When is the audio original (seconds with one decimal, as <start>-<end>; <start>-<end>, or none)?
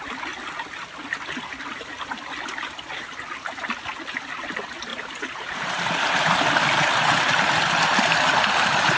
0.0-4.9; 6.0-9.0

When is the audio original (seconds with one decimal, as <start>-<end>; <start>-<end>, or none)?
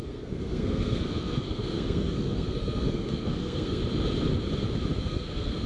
3.8-5.0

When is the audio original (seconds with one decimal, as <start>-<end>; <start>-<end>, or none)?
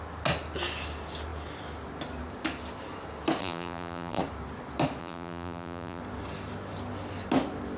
0.0-3.4; 4.2-5.0; 6.0-7.8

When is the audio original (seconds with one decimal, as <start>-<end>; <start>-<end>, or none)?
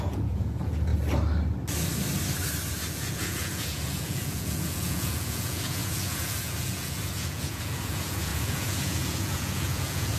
0.9-2.9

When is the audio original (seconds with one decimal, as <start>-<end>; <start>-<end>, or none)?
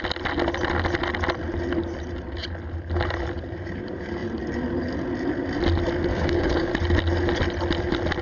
0.0-6.1; 6.7-8.2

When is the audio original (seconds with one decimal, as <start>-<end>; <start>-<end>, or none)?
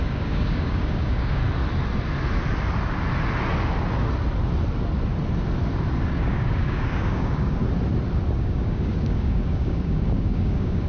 1.4-6.2; 7.6-8.4